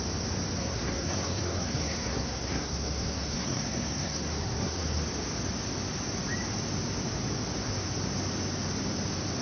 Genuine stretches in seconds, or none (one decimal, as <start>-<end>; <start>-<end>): 0.0-0.6; 5.0-9.4